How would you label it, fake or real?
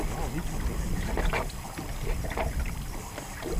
real